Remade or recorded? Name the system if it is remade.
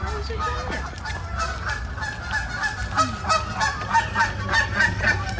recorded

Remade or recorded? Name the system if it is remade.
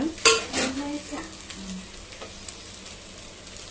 recorded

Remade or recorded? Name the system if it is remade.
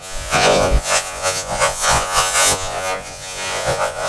remade, vocoder, Vocos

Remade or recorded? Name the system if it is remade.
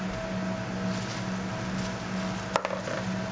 recorded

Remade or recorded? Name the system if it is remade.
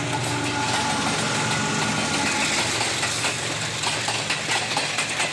recorded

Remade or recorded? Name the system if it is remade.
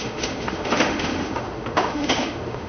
remade, autoencoder, DAC-VAE